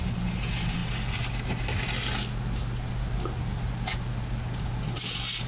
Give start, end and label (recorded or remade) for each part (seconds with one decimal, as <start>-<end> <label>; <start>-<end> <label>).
0.0-5.5 recorded